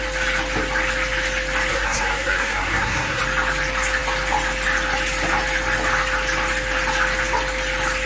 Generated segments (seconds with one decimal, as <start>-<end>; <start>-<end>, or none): 1.7-3.2